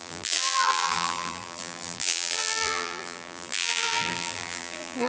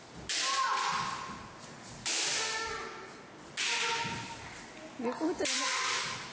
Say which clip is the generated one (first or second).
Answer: first